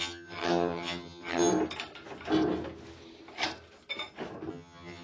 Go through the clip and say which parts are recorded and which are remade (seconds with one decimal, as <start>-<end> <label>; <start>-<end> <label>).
0.0-1.5 remade; 1.5-4.5 recorded; 4.5-5.0 remade